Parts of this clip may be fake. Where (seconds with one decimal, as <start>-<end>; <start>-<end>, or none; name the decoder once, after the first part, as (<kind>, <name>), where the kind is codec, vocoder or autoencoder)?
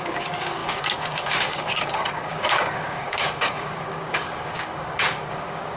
0.0-5.8 (codec, DAC)